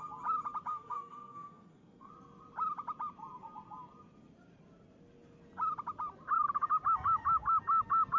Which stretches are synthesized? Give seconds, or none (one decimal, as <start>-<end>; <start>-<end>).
0.7-2.1